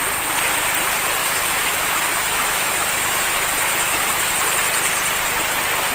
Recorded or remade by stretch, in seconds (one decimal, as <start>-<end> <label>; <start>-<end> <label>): 0.0-1.2 recorded; 1.2-4.3 remade; 4.3-5.9 recorded